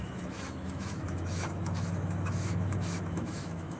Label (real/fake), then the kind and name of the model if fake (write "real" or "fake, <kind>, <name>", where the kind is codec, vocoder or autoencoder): fake, autoencoder, DAC-VAE